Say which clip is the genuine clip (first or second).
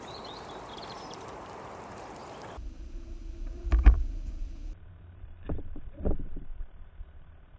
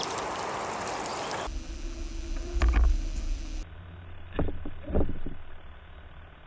second